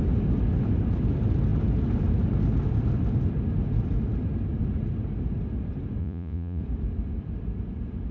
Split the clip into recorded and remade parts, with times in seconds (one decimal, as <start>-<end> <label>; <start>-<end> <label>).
0.0-6.0 recorded; 6.0-6.6 remade; 6.6-8.1 recorded